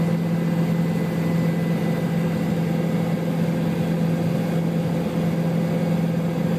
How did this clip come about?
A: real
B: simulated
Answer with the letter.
A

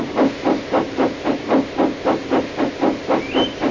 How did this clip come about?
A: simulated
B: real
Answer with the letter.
B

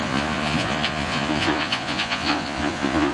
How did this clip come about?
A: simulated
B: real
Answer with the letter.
A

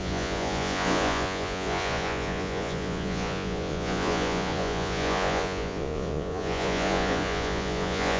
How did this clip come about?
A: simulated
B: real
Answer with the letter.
A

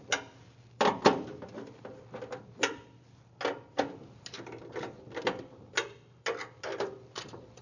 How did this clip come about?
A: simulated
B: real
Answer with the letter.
B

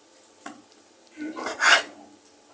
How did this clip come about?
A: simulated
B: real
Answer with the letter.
B